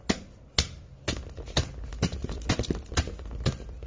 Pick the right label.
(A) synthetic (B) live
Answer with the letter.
B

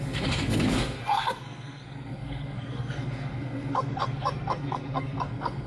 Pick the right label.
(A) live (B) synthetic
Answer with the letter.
B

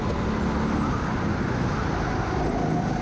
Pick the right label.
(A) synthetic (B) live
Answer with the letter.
B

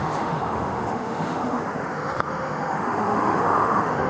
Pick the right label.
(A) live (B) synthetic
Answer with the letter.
B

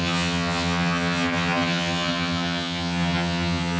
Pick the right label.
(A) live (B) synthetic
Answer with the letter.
B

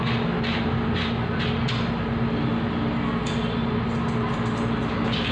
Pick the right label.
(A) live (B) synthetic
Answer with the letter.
A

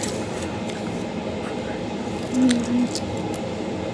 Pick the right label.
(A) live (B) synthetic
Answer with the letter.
A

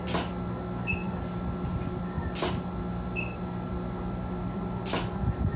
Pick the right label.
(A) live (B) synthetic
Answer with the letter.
A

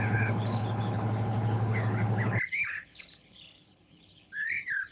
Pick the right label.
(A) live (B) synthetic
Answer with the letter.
B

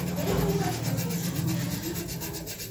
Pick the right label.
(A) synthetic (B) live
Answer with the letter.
B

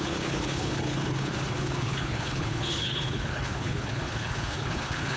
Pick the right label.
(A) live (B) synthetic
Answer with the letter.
B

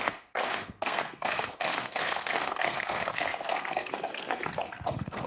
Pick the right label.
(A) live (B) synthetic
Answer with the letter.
B